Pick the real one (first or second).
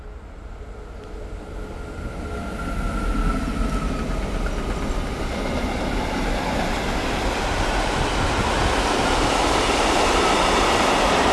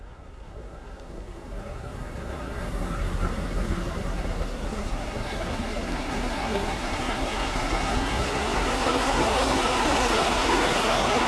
first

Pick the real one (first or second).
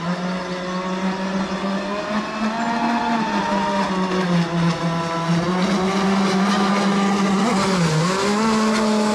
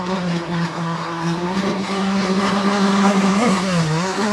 first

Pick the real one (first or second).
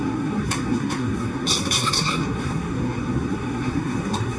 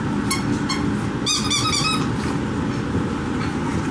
second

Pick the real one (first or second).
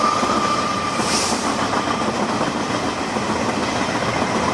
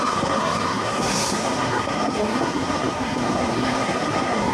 first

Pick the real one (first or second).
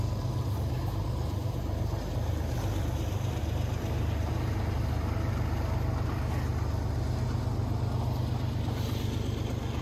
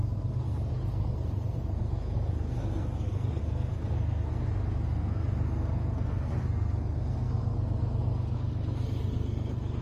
first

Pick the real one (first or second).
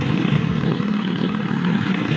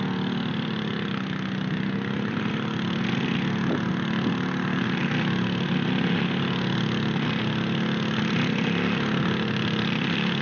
second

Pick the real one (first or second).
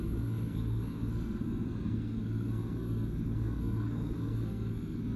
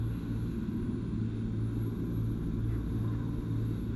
second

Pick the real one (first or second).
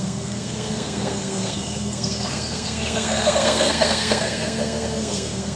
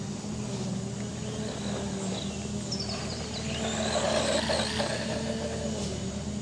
second